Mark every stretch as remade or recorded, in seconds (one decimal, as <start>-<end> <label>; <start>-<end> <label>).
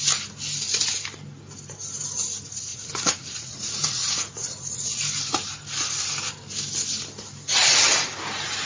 0.0-2.7 recorded; 2.7-5.0 remade; 5.0-8.7 recorded